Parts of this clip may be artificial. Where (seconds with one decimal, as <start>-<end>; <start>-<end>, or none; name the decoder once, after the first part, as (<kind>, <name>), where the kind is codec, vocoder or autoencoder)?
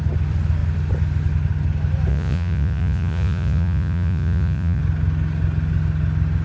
2.1-4.8 (vocoder, Vocos)